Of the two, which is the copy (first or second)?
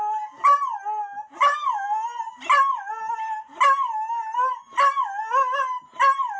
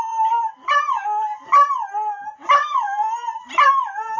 second